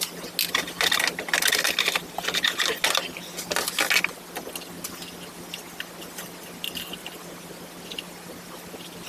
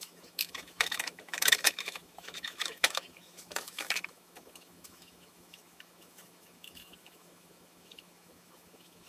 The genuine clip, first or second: first